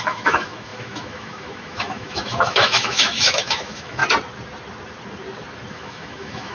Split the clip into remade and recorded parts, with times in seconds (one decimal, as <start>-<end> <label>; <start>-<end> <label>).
0.0-4.0 remade; 4.0-5.7 recorded; 5.7-6.5 remade